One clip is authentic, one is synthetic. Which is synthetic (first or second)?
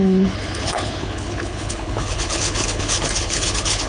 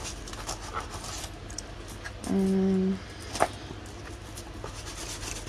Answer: first